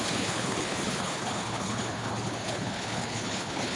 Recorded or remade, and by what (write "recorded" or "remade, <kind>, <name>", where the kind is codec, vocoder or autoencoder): remade, codec, HILCodec